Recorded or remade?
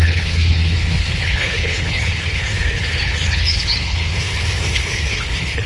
remade